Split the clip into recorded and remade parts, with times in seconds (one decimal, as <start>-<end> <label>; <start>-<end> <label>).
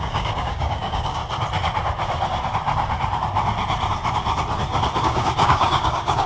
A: 0.0-1.2 remade; 1.2-5.0 recorded; 5.0-6.3 remade